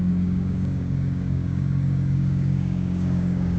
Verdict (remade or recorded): remade